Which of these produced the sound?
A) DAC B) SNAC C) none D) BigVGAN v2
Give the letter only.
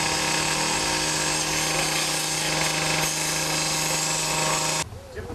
C